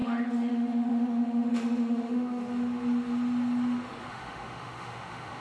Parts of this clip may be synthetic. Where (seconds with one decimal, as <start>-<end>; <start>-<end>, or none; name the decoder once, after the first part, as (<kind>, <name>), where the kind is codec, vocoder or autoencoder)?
0.0-2.4 (autoencoder, DAC-VAE); 4.1-5.4